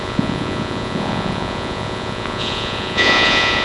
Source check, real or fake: fake